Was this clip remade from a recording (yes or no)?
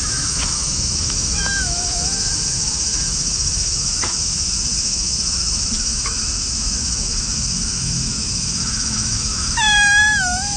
yes